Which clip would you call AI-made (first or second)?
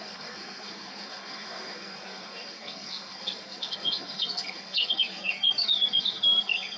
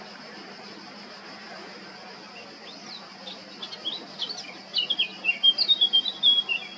first